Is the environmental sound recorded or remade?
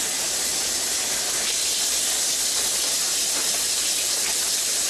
recorded